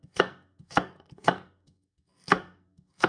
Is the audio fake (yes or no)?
yes